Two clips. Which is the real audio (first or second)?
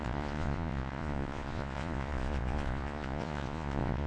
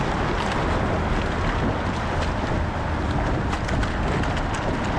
second